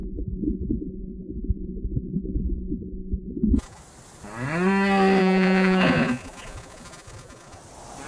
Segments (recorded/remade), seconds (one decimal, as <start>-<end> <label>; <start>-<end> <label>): 0.0-3.8 remade; 3.8-5.2 recorded; 5.2-7.6 remade; 7.6-8.1 recorded